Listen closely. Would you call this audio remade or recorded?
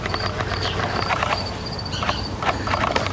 remade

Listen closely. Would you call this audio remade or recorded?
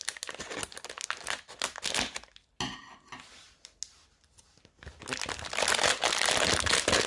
recorded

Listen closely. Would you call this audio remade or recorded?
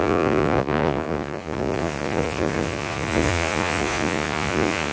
remade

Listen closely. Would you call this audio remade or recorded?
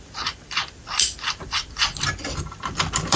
remade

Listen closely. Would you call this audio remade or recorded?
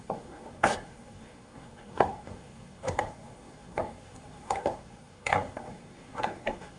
remade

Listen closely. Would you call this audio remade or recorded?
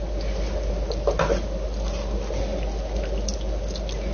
recorded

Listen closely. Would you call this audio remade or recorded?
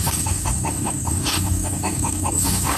remade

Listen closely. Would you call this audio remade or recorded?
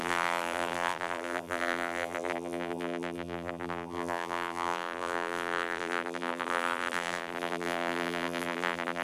remade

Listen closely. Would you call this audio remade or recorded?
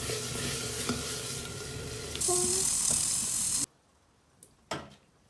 recorded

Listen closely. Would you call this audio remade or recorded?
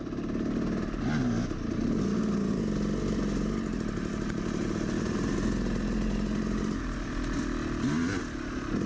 recorded